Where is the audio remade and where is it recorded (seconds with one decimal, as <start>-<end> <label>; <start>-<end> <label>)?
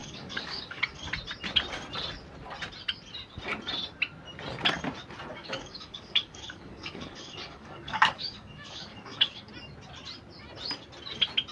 0.0-0.8 remade; 0.8-5.3 recorded; 5.3-9.5 remade; 9.5-11.5 recorded